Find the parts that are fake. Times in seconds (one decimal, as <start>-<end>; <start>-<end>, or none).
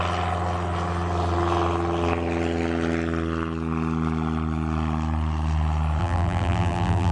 6.0-7.1